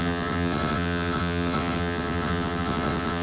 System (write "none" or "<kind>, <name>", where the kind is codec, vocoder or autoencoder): vocoder, WaveNeXt